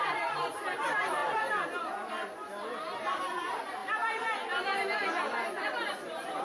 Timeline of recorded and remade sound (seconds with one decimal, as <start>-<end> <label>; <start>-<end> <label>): 0.0-1.2 remade; 1.2-3.2 recorded; 3.2-3.8 remade; 3.8-5.6 recorded; 5.6-6.4 remade